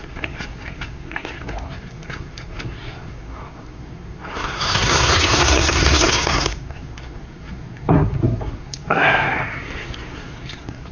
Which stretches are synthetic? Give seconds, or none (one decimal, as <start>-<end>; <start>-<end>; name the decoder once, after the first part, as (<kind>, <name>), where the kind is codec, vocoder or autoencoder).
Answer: 0.0-10.9 (codec, SNAC)